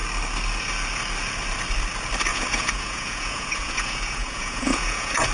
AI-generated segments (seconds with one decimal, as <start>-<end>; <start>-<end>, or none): 2.3-5.3